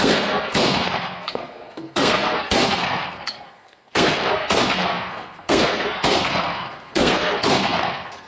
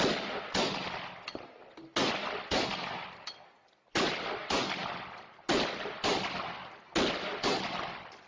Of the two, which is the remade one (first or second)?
first